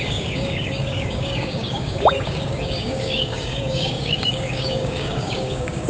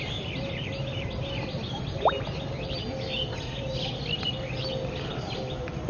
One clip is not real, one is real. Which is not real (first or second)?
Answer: first